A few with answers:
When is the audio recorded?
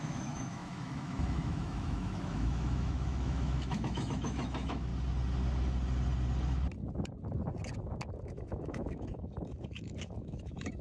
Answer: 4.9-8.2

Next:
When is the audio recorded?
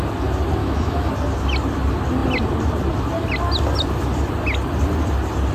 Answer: 0.0-0.6; 1.1-5.5